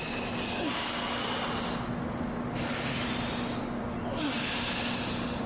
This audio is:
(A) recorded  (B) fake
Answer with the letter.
A